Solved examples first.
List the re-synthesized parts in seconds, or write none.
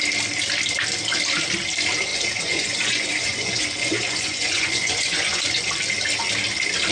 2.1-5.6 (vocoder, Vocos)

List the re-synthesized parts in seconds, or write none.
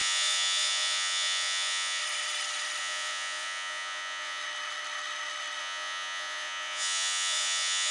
0.0-2.0 (vocoder, Vocos); 2.8-4.4; 5.6-7.9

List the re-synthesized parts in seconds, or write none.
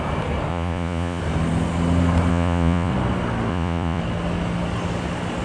0.5-1.2 (vocoder, Vocos); 2.3-2.9; 3.5-4.0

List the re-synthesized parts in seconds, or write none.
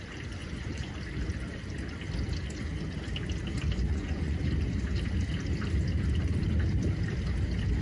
0.4-0.9 (vocoder, Vocos); 3.9-4.4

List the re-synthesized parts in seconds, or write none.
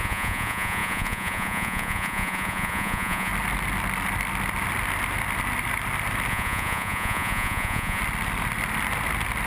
0.0-3.3 (vocoder, Vocos); 6.3-8.0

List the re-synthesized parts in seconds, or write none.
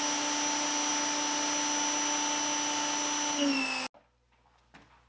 none